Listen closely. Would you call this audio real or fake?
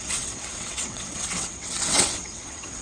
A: fake